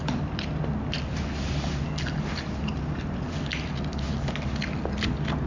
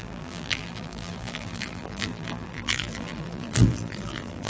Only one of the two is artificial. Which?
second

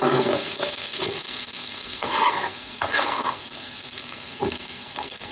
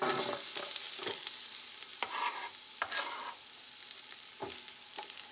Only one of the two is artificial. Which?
first